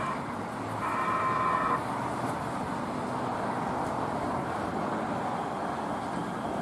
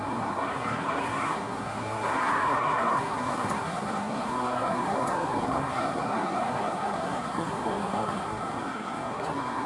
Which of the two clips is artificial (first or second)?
second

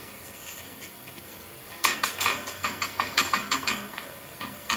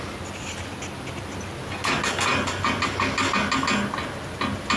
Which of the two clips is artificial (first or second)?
first